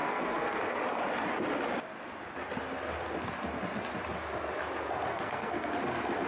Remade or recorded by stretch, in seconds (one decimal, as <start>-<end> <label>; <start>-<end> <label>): 0.0-0.6 remade; 0.6-5.1 recorded; 5.1-5.7 remade; 5.7-6.3 recorded